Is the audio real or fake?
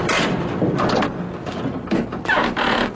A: real